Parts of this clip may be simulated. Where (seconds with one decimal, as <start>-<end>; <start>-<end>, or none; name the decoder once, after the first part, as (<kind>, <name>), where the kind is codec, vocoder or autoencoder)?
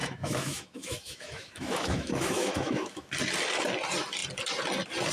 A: 0.0-3.1 (autoencoder, DAC-VAE)